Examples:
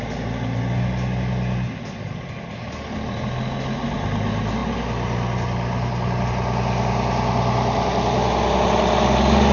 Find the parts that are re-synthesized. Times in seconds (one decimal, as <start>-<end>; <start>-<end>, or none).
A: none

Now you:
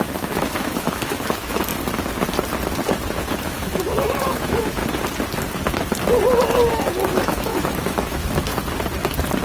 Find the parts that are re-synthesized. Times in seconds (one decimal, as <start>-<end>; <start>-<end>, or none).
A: 0.0-1.7; 3.2-4.8; 6.7-8.5

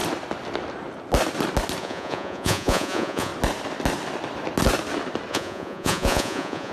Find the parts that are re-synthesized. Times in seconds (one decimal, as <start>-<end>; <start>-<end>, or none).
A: 1.8-3.3; 5.3-6.7